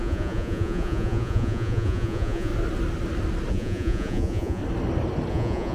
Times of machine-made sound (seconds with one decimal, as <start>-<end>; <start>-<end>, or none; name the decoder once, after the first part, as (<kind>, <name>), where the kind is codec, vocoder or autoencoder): 0.0-2.5 (vocoder, Vocos); 3.5-4.6; 5.3-5.7